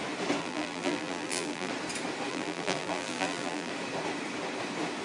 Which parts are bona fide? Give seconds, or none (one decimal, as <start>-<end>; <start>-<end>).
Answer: 0.0-0.4; 1.7-2.3; 3.7-5.0